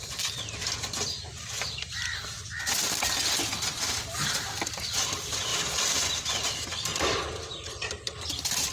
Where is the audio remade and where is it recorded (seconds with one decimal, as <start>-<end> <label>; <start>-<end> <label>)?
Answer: 0.0-8.7 remade